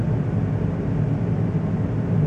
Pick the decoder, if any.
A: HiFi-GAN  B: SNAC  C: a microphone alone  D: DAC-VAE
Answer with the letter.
C